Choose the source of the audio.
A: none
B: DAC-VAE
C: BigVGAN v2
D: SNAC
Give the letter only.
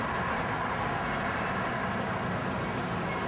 A